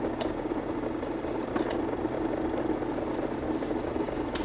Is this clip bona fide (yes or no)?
yes